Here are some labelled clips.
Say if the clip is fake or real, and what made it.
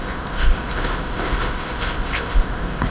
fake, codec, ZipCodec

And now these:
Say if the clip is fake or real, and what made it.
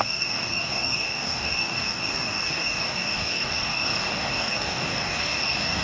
fake, codec, DAC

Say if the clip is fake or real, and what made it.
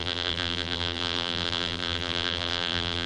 fake, vocoder, BigVGAN v2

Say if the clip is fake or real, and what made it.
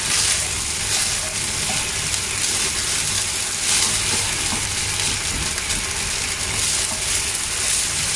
real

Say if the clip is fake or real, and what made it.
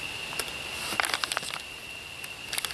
real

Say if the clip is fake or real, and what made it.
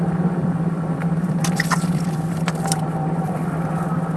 fake, vocoder, BigVGAN v2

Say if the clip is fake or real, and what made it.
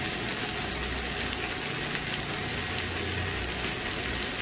real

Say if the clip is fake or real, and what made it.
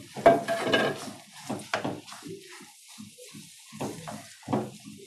real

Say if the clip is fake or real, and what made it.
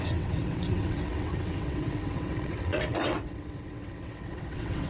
fake, vocoder, WaveNeXt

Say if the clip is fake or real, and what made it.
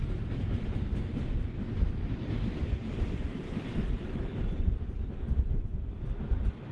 real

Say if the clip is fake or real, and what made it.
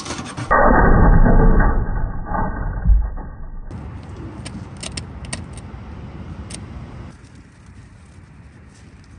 real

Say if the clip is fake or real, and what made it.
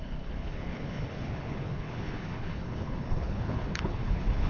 fake, codec, HILCodec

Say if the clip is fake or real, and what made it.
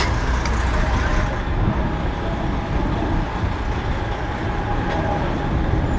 real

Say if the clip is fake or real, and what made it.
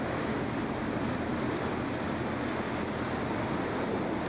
real